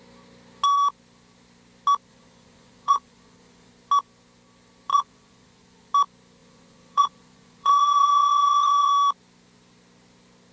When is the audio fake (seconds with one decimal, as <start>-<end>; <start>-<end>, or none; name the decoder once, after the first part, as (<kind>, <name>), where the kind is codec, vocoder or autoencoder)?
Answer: 2.1-3.7 (vocoder, Vocos); 4.9-5.9; 6.4-8.9